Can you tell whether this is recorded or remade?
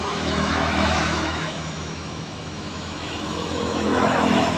remade